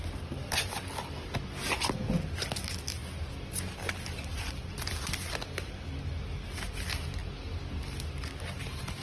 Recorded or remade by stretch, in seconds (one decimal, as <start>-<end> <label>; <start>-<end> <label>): 0.0-9.0 recorded